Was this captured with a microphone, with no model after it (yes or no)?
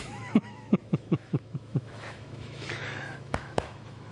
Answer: no